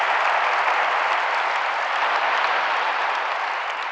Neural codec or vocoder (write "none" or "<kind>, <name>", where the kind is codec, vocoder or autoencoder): vocoder, BigVGAN v2